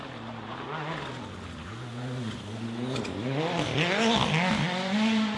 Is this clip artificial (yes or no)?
no